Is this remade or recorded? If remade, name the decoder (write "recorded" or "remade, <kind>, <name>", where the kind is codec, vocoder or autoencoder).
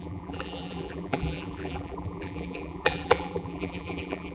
remade, vocoder, BigVGAN v2